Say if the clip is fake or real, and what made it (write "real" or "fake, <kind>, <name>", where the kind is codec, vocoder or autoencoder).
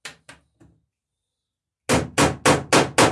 real